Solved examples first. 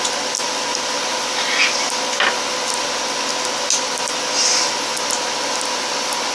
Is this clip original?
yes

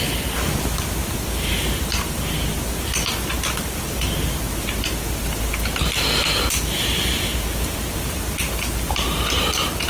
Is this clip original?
yes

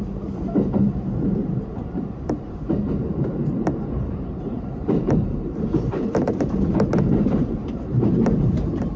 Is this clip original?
no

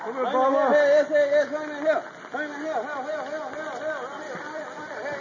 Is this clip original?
yes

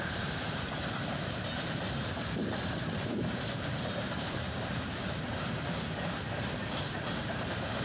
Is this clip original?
no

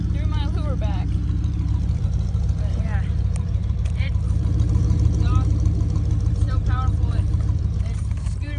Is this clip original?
no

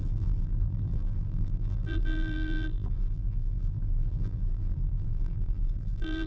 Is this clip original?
no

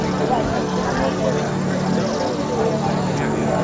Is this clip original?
yes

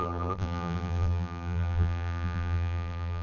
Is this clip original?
no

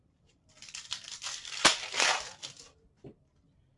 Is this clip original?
no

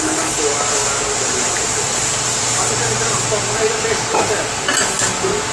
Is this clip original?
yes